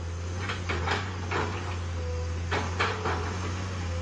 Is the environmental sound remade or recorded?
recorded